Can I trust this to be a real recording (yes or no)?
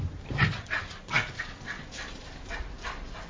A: yes